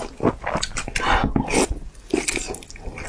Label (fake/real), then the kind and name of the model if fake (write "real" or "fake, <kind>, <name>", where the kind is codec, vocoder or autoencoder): real